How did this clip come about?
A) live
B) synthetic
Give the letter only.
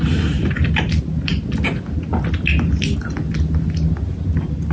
A